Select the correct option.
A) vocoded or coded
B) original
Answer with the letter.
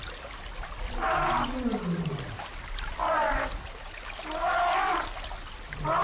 B